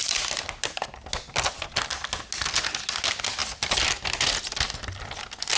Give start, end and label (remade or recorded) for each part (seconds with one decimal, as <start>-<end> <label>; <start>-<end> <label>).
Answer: 0.0-5.6 recorded

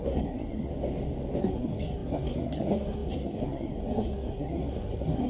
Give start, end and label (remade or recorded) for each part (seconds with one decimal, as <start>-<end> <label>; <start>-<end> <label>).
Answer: 0.0-0.7 remade; 0.7-1.4 recorded; 1.4-5.3 remade